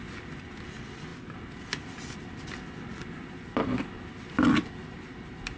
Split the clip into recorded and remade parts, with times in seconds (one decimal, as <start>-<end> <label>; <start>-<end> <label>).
0.0-4.8 recorded; 4.8-5.6 remade